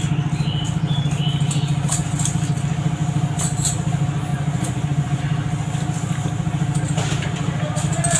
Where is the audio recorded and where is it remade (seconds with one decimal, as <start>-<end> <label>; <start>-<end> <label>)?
0.0-4.3 recorded; 4.3-5.2 remade; 5.2-8.2 recorded